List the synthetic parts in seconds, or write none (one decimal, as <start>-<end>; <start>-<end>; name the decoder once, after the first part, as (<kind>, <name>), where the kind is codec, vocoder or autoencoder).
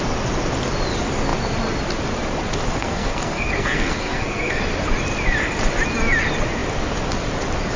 2.8-4.6 (codec, SNAC)